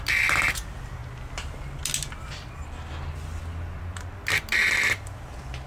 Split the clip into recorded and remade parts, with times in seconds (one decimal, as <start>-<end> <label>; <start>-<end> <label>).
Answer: 0.0-5.7 recorded